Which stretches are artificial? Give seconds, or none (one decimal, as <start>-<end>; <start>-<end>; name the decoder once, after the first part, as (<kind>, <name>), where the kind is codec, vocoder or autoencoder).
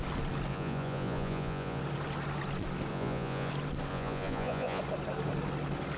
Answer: 0.5-1.8 (vocoder, Vocos); 2.9-3.5; 3.9-4.8